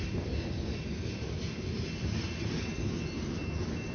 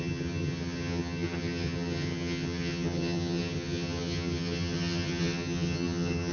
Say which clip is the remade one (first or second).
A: second